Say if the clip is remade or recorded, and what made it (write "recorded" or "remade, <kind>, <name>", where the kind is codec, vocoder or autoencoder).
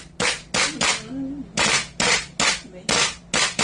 recorded